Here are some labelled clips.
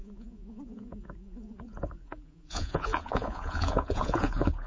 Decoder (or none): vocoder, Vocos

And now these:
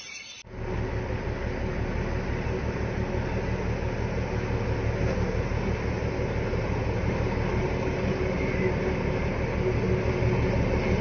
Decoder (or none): none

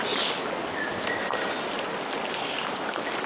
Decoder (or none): none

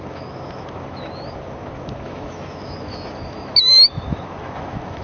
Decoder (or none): autoencoder, DAC-VAE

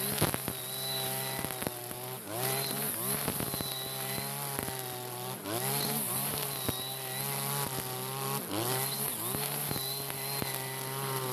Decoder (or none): none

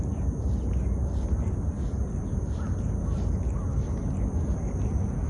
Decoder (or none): none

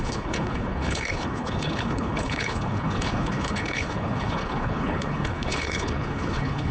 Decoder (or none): codec, HILCodec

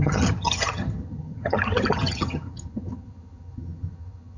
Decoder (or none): vocoder, HiFi-GAN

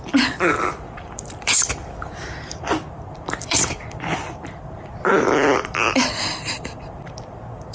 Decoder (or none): vocoder, BigVGAN v2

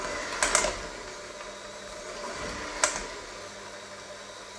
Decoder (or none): none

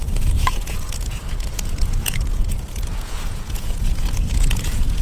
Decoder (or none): vocoder, Vocos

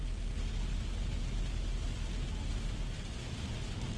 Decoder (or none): none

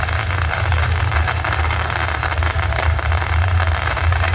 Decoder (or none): vocoder, BigVGAN v2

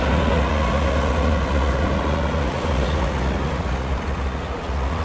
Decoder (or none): vocoder, Vocos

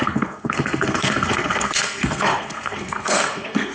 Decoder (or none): codec, SNAC